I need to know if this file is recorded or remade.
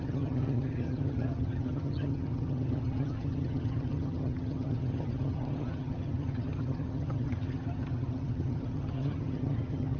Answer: remade